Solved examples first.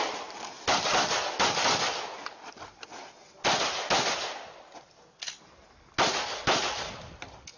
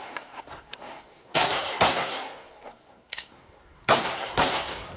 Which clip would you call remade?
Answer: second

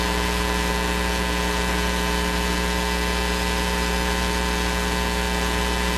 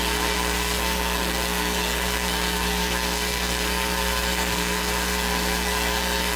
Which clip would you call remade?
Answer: second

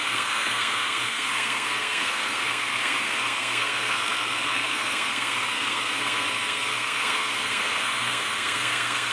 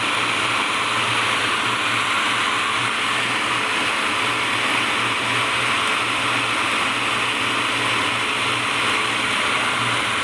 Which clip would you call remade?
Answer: first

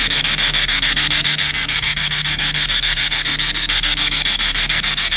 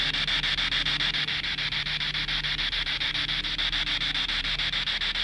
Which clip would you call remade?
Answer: first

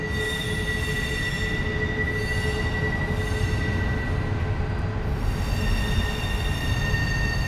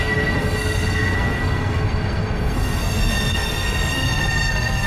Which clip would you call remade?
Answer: second